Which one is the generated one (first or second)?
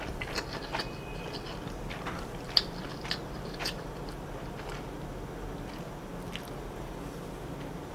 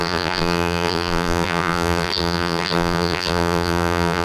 second